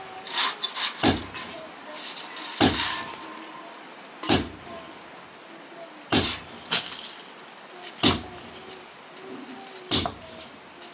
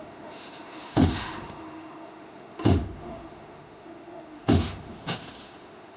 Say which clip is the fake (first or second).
second